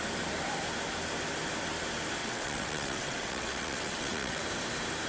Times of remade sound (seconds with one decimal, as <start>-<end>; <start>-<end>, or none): 2.2-4.4